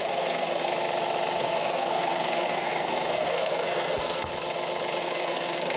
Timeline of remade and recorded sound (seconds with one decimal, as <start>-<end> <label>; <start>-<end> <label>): 0.0-0.7 remade; 0.7-1.4 recorded; 1.4-4.3 remade; 4.3-5.0 recorded; 5.0-5.8 remade